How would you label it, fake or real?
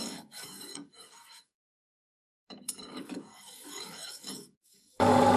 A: fake